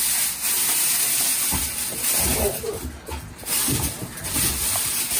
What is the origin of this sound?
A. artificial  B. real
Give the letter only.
B